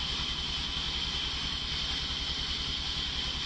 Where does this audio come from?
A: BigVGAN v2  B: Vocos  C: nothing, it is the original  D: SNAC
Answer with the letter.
C